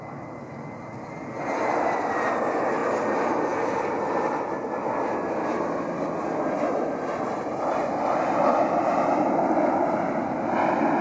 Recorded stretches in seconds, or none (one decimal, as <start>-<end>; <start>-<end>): 0.0-11.0